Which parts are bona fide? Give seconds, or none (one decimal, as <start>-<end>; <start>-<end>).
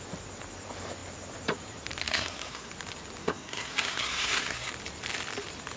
0.0-2.0; 2.7-3.2; 4.7-5.8